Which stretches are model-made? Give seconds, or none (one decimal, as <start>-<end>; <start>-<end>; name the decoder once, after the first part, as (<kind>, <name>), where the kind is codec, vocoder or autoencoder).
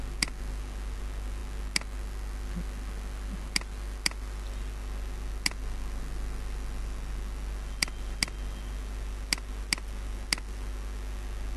none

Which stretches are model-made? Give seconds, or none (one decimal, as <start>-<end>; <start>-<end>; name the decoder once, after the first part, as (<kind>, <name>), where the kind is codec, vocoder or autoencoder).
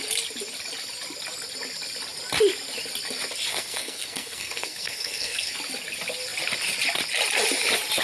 3.5-5.5 (codec, SNAC)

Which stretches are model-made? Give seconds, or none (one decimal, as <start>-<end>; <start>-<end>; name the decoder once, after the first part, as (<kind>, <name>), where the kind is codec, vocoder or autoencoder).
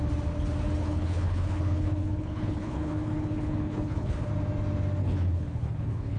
0.8-4.3 (codec, HILCodec); 5.0-6.2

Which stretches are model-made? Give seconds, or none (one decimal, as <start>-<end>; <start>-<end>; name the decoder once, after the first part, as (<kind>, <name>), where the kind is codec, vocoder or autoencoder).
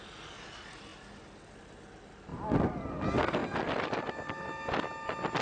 2.3-3.0 (vocoder, BigVGAN v2); 3.4-4.1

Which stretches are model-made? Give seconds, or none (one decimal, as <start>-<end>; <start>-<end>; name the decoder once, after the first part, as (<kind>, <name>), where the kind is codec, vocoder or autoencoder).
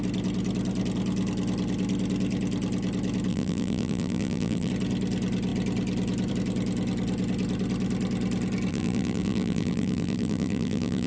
3.3-4.7 (vocoder, BigVGAN v2); 8.7-11.1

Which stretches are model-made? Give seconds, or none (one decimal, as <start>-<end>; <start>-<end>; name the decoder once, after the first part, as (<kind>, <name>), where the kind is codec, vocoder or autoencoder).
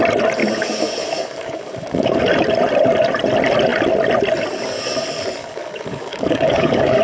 0.4-2.2 (codec, DAC); 5.4-7.0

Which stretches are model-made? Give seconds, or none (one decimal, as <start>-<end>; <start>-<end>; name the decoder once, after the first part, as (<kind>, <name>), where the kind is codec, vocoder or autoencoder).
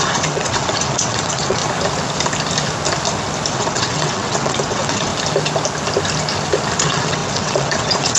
0.0-1.6 (vocoder, WaveNeXt); 3.5-5.1; 6.8-8.2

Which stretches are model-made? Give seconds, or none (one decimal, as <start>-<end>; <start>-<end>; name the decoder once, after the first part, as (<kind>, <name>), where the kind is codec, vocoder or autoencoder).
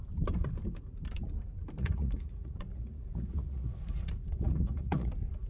1.8-5.1 (vocoder, Vocos)